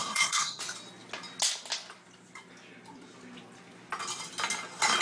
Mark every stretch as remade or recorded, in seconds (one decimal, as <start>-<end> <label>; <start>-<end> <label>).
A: 0.0-0.6 remade; 0.6-5.0 recorded